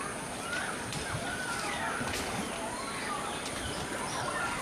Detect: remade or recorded recorded